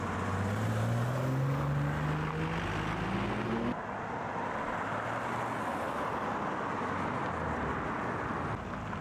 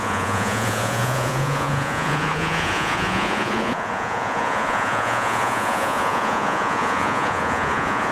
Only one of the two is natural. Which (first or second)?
first